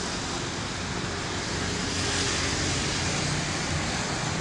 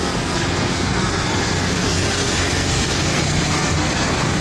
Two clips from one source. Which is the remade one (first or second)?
second